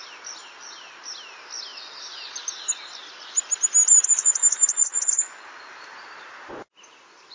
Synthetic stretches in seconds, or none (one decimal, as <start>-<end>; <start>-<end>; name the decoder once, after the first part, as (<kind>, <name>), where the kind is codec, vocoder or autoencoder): 4.7-5.4 (vocoder, Vocos)